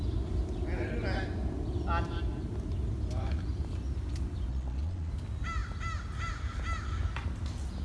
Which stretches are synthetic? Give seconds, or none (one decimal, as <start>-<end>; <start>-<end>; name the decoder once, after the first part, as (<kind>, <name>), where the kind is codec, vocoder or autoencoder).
4.5-5.1 (vocoder, Vocos)